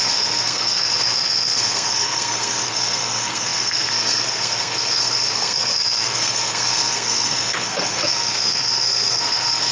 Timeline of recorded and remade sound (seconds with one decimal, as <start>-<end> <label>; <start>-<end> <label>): 0.0-9.7 remade